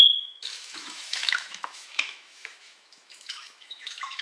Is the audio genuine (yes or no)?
no